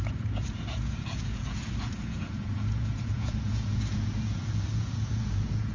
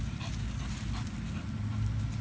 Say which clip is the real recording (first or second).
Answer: second